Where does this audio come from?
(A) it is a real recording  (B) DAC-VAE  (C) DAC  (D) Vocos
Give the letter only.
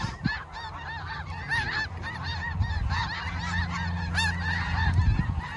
A